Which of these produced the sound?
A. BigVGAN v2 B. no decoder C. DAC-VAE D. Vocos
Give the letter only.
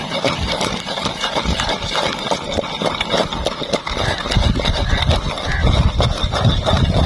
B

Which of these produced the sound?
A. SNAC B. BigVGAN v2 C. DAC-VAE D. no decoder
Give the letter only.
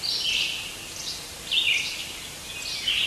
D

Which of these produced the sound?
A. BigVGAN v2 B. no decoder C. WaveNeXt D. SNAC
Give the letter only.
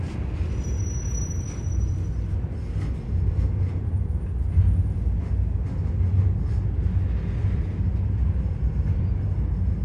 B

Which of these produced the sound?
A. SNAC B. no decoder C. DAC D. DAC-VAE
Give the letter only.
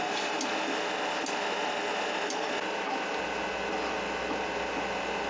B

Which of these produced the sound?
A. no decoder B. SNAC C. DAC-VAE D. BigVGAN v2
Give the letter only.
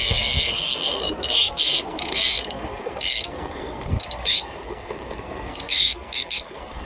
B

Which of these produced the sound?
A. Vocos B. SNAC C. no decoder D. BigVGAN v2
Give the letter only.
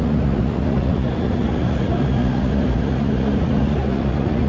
A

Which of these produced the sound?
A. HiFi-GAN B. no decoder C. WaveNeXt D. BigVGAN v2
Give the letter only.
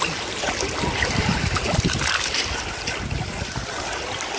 B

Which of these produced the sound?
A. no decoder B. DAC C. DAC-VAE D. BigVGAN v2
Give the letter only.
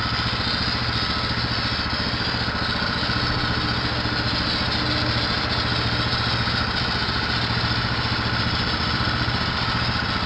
A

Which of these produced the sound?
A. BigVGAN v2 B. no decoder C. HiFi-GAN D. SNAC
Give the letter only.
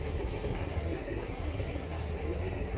D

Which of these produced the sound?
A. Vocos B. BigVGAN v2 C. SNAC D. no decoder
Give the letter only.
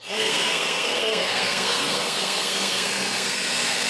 C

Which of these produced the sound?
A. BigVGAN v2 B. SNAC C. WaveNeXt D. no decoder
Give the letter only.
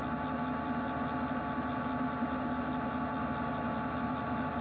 D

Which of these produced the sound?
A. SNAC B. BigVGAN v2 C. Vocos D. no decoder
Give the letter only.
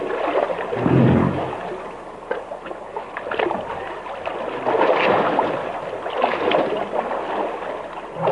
D